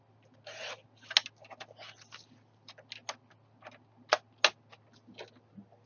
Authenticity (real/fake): real